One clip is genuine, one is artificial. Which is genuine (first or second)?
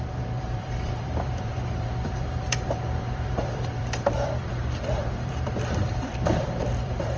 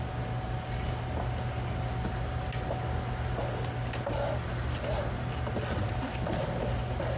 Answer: second